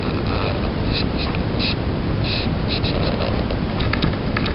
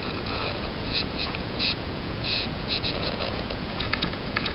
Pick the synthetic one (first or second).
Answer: second